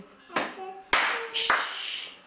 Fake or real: real